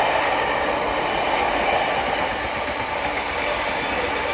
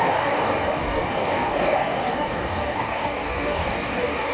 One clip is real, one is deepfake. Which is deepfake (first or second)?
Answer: second